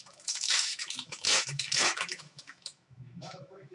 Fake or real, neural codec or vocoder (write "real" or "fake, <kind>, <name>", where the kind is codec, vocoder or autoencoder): fake, autoencoder, DAC-VAE